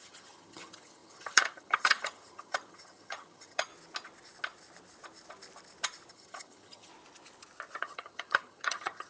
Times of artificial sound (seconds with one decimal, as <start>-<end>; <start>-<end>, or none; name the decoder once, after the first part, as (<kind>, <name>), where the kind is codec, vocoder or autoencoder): 0.0-3.7 (vocoder, HiFi-GAN); 6.1-6.9; 7.8-9.1